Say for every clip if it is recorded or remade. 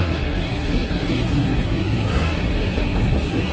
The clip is remade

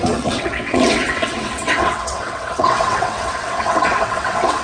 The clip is remade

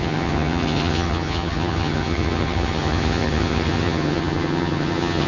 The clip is remade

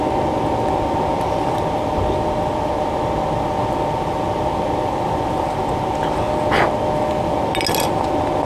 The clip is recorded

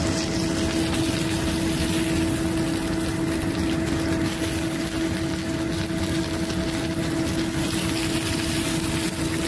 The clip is recorded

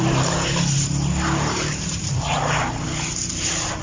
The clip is recorded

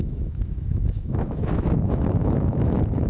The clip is remade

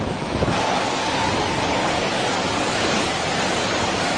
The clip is remade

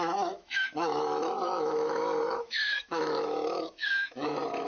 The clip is remade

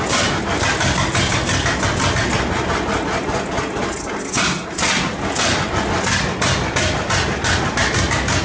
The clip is recorded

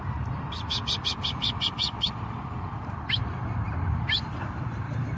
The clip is remade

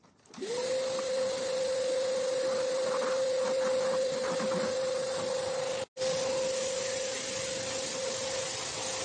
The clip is recorded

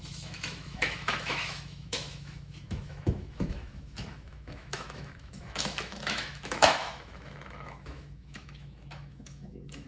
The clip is remade